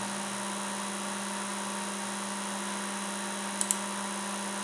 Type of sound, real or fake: real